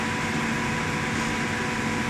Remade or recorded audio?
recorded